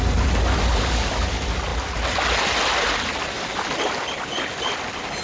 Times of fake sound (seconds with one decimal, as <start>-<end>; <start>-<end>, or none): none